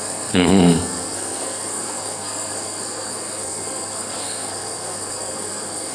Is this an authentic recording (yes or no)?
no